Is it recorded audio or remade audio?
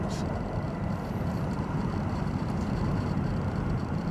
remade